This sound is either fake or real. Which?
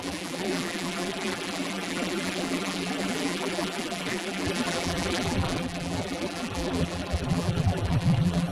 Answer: fake